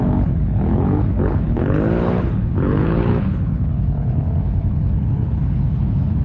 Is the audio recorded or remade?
remade